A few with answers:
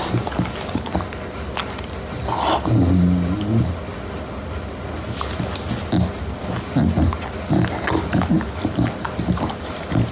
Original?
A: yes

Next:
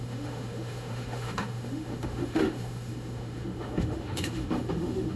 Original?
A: no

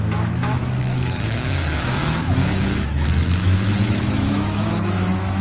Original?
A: no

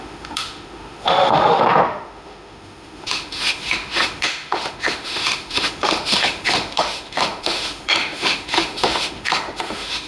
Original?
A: no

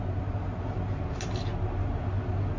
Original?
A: yes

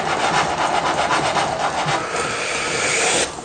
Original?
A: yes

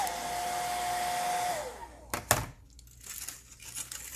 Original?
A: yes